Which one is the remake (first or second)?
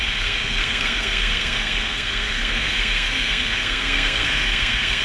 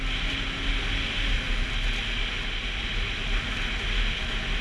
first